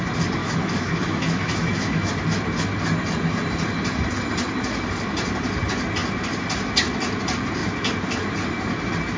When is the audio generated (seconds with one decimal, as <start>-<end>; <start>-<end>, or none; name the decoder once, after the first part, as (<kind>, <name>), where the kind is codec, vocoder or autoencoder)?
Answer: 0.4-2.1 (autoencoder, DAC-VAE)